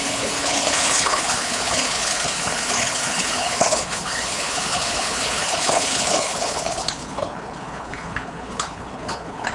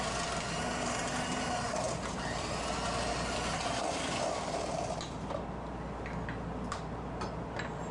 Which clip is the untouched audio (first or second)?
second